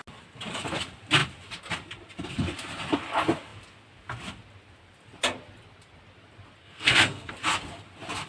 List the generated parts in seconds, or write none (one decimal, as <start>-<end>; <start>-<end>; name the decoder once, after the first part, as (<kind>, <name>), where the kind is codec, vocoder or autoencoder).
6.6-7.3 (codec, SNAC)